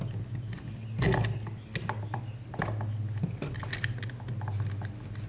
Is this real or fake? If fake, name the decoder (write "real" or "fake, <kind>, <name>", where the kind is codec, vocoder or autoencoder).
real